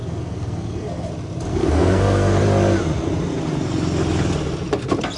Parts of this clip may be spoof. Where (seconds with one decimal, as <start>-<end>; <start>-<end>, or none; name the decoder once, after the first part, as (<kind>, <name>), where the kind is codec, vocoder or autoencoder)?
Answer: 0.0-1.1 (codec, SNAC); 1.5-2.4